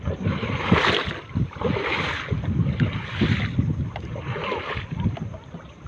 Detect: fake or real real